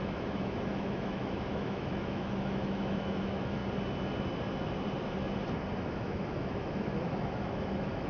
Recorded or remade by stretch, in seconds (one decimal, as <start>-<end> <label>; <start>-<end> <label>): 0.0-3.6 remade; 3.6-5.8 recorded; 5.8-8.1 remade